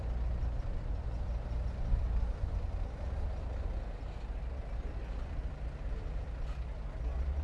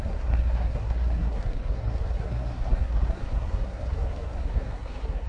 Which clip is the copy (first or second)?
second